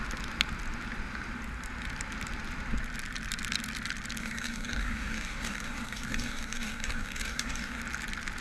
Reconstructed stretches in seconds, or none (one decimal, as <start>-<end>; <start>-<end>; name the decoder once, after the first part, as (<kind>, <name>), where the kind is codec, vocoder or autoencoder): 4.2-7.8 (codec, DAC)